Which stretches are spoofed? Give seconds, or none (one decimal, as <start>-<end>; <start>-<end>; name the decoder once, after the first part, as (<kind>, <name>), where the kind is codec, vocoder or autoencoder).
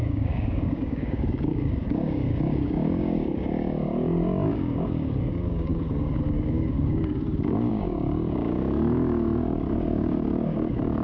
0.0-11.0 (codec, DAC)